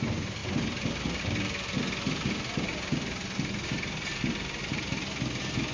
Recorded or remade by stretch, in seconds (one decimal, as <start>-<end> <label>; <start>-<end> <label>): 0.0-5.7 recorded